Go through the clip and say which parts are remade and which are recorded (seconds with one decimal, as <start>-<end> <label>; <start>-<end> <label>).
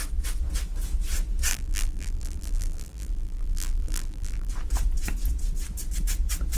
0.0-1.5 recorded; 1.5-4.5 remade; 4.5-6.6 recorded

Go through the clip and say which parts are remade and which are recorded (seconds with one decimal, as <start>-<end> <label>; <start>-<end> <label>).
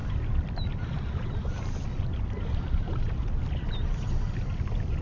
0.0-5.0 recorded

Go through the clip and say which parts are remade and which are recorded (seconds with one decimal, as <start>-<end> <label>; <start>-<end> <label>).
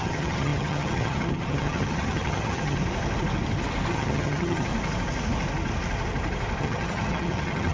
0.0-2.8 remade; 2.8-3.9 recorded; 3.9-4.7 remade; 4.7-6.6 recorded; 6.6-7.7 remade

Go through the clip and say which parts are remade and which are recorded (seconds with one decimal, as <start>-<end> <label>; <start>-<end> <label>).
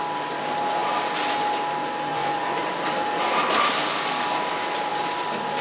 0.0-2.1 recorded; 2.1-2.7 remade; 2.7-5.6 recorded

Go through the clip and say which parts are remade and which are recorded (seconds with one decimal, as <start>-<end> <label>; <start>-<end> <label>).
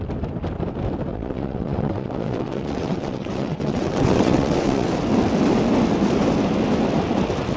0.0-1.1 recorded; 1.1-4.9 remade; 4.9-7.6 recorded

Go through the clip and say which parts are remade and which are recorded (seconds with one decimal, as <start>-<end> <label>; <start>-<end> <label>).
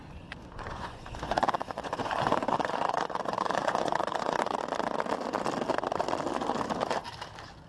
0.0-4.6 remade; 4.6-7.7 recorded